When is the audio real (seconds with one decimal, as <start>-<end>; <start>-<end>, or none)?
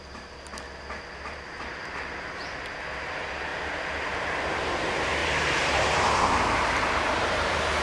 0.5-1.1; 5.2-7.2